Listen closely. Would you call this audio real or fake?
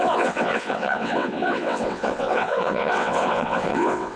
fake